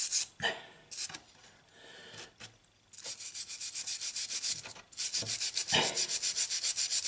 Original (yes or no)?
yes